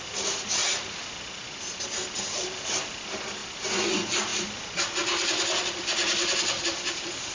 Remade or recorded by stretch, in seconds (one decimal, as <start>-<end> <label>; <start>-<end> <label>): 0.0-3.4 remade; 3.4-3.9 recorded; 3.9-7.3 remade